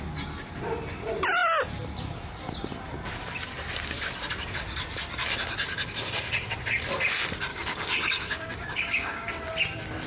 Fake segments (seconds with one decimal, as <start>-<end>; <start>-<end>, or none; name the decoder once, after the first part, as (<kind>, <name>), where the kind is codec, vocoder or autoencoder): 7.5-9.3 (codec, DAC)